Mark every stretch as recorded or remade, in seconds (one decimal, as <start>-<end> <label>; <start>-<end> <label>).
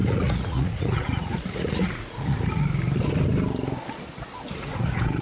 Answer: 0.0-2.6 remade; 2.6-4.7 recorded; 4.7-5.2 remade